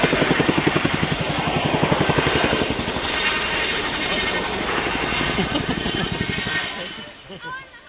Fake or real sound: real